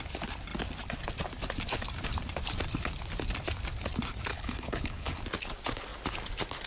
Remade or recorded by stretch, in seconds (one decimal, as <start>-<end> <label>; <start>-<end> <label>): 0.0-4.3 recorded; 4.3-5.2 remade; 5.2-6.7 recorded